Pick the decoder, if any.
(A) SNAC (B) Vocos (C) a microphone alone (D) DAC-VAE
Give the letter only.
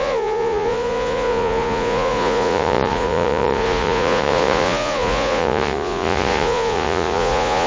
B